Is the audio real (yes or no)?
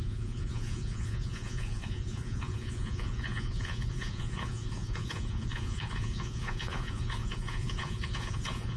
no